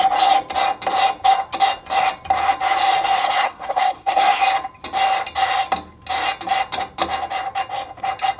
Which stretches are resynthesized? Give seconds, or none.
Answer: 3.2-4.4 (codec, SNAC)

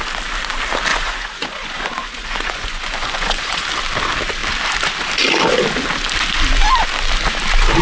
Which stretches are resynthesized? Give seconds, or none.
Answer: 0.9-3.6 (vocoder, Vocos)

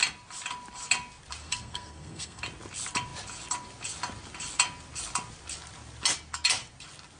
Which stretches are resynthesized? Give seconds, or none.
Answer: 1.4-2.4 (codec, SNAC)

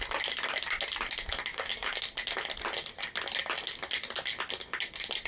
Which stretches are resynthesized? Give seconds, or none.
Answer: 1.5-2.0 (codec, DAC)

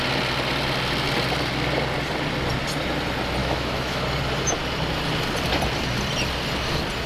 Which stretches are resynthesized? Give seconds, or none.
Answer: 3.4-4.0 (autoencoder, DAC-VAE)

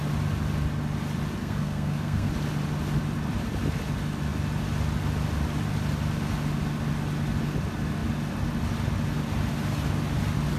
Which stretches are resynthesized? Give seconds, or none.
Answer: 1.4-2.3 (codec, SNAC)

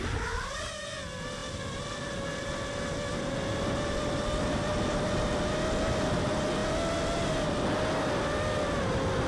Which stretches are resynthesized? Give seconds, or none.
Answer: none